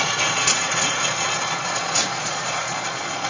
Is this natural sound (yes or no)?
no